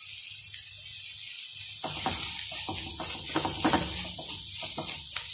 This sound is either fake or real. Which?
real